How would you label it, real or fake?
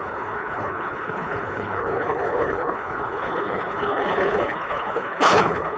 fake